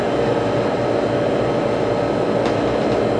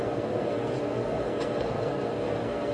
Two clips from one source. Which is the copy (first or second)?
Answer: second